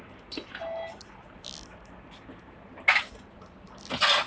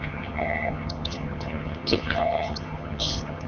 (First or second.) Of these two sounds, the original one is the first